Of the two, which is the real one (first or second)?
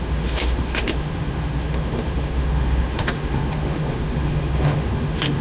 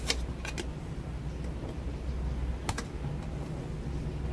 second